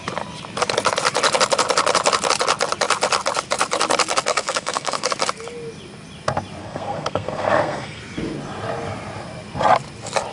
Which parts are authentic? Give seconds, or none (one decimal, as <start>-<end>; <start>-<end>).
0.0-4.3; 5.1-6.6; 8.0-10.3